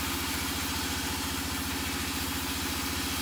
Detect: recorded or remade recorded